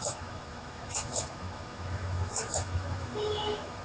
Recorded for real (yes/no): no